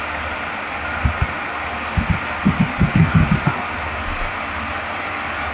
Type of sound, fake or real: real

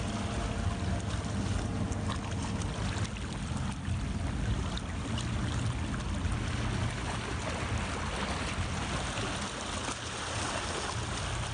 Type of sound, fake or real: real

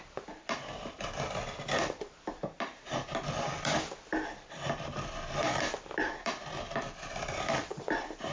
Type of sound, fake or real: fake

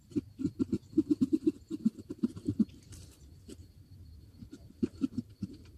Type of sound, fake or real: fake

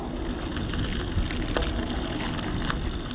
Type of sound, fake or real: real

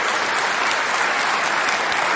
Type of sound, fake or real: real